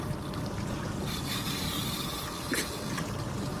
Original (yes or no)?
yes